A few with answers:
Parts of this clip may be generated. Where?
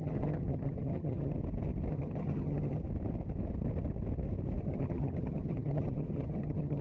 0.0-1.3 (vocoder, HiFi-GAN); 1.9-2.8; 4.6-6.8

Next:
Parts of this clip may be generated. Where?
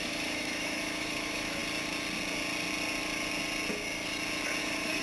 0.0-1.6 (autoencoder, DAC-VAE); 4.6-5.0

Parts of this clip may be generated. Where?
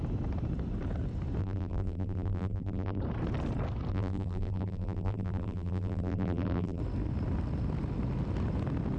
1.4-3.0 (vocoder, BigVGAN v2); 3.9-6.8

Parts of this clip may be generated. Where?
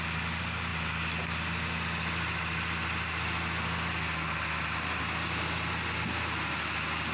none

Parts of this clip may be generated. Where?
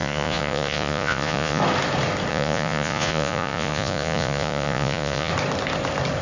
0.0-1.6 (vocoder, Vocos); 2.3-5.3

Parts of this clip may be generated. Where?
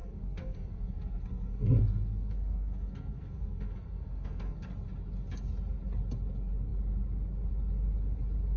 0.0-4.7 (codec, SNAC)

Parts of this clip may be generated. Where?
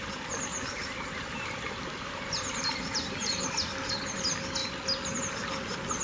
0.5-3.5 (vocoder, BigVGAN v2)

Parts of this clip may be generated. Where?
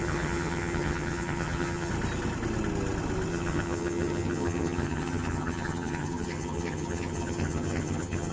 0.0-1.9 (vocoder, HiFi-GAN); 3.3-8.3